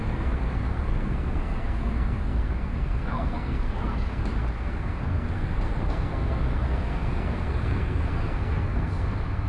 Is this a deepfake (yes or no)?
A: yes